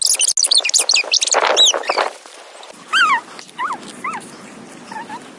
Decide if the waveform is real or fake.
real